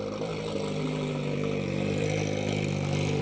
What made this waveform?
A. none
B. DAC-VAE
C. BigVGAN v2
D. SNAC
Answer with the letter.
C